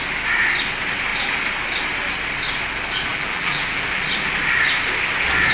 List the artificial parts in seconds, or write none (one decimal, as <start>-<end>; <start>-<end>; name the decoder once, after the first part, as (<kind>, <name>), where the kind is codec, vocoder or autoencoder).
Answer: 3.1-4.0 (vocoder, BigVGAN v2)